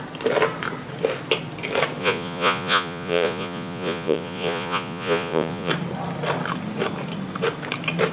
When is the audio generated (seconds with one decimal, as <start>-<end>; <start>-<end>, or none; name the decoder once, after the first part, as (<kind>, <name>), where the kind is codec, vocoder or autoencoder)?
2.0-5.7 (vocoder, Vocos)